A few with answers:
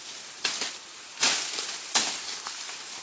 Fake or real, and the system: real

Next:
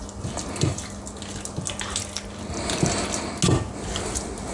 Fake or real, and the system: real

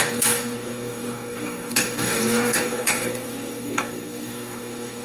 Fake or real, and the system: fake, codec, DAC